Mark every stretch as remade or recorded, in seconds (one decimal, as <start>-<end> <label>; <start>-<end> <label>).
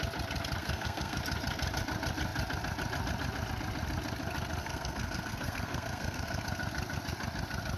0.0-0.6 recorded; 0.6-1.2 remade; 1.2-4.6 recorded; 4.6-6.4 remade; 6.4-7.8 recorded